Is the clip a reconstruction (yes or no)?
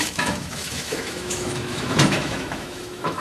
yes